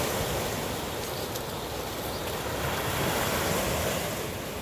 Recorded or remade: recorded